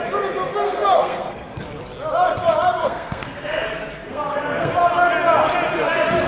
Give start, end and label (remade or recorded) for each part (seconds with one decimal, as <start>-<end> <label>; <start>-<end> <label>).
0.0-0.5 recorded; 0.5-1.6 remade; 1.6-2.8 recorded; 2.8-4.7 remade; 4.7-6.3 recorded